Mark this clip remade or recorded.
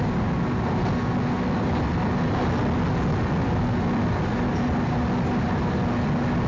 recorded